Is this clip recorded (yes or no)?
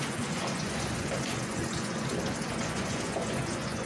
no